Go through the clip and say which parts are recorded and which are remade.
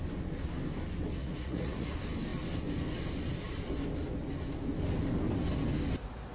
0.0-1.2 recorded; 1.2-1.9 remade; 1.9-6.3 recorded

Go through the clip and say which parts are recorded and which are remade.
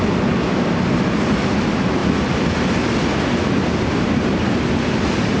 0.0-5.4 recorded